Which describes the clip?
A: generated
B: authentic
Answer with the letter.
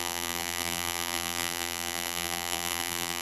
A